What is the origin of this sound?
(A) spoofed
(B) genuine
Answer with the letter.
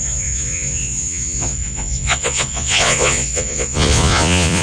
A